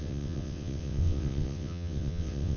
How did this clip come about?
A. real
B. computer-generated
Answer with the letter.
B